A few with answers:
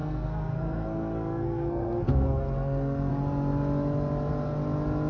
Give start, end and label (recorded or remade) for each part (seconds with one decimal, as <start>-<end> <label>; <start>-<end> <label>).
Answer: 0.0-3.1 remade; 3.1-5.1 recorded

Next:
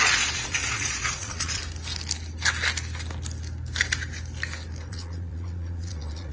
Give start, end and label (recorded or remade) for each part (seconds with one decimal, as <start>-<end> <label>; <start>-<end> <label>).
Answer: 0.0-1.6 remade; 1.6-4.9 recorded; 4.9-6.3 remade

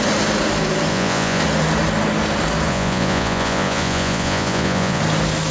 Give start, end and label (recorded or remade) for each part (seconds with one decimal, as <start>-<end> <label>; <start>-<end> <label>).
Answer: 0.0-0.9 recorded; 0.9-1.4 remade; 1.4-2.7 recorded; 2.7-5.0 remade; 5.0-5.5 recorded

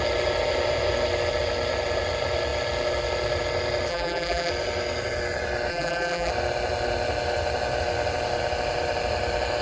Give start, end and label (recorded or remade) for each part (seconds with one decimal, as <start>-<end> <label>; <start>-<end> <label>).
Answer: 0.0-3.9 recorded; 3.9-4.5 remade; 4.5-5.7 recorded; 5.7-6.3 remade; 6.3-9.6 recorded

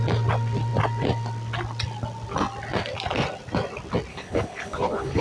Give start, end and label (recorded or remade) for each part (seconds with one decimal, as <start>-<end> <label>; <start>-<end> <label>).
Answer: 0.0-4.1 recorded; 4.1-5.2 remade

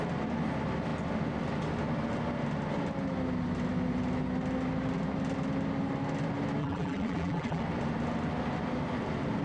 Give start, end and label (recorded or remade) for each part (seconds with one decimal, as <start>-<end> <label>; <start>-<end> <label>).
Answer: 0.0-6.6 recorded; 6.6-7.6 remade; 7.6-9.4 recorded